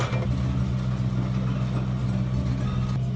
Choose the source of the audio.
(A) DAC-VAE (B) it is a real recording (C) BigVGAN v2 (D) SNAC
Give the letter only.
B